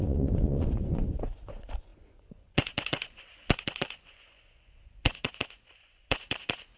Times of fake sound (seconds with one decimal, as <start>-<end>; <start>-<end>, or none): 0.0-6.8

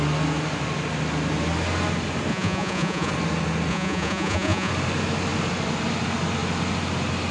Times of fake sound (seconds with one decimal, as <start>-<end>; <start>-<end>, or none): 2.3-3.1; 3.7-4.7

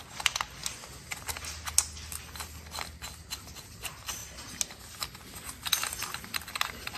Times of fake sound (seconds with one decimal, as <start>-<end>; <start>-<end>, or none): none